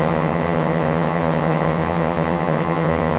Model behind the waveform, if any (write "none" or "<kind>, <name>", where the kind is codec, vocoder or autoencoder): vocoder, HiFi-GAN